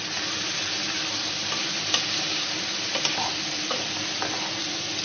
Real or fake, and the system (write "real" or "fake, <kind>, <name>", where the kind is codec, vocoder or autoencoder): real